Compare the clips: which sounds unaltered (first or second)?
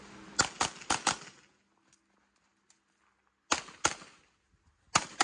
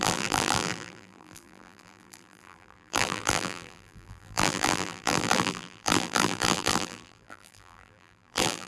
first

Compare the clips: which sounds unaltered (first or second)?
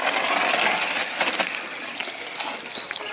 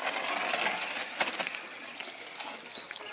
second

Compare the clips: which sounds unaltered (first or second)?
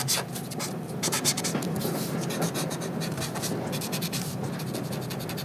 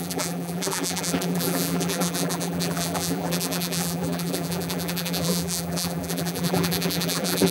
first